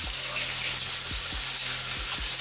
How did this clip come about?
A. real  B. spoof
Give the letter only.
A